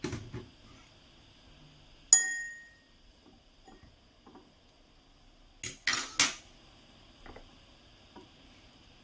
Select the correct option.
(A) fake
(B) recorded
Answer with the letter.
B